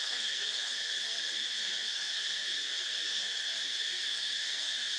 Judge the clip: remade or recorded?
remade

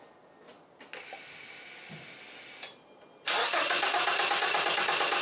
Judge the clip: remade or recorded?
recorded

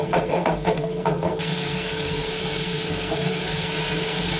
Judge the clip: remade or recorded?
remade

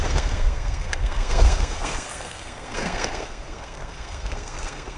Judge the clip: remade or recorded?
remade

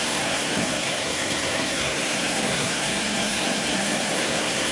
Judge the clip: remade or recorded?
remade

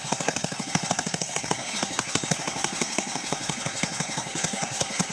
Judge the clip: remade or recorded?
remade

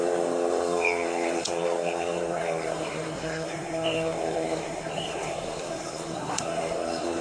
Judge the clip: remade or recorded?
remade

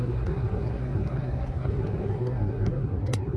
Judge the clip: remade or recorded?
remade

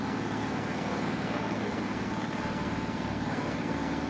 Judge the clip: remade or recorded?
remade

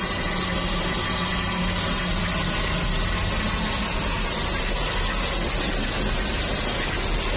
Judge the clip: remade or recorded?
recorded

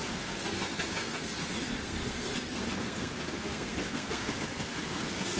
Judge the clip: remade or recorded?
remade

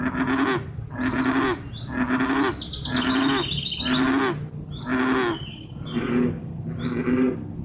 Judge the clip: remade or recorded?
recorded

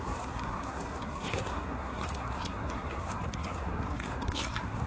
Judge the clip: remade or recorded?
remade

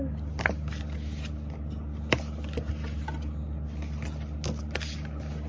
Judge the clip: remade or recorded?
recorded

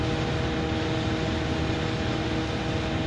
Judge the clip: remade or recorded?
recorded